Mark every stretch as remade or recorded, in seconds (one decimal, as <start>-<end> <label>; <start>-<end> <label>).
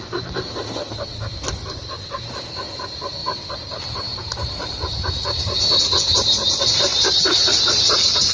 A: 0.0-8.3 recorded